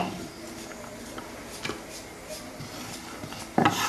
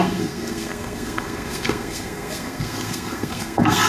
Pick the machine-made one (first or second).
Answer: second